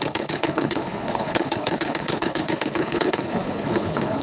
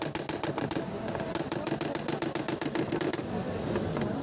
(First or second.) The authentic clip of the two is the second